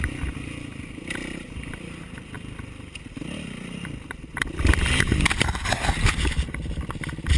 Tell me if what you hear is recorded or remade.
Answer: remade